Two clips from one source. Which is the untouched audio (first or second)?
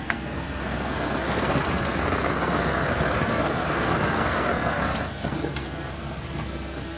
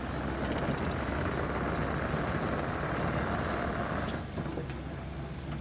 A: second